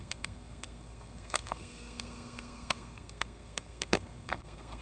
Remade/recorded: remade